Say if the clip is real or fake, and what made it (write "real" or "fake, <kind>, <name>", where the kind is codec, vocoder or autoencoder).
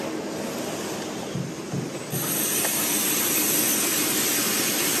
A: real